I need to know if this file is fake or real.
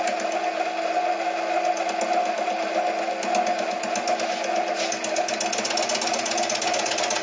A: real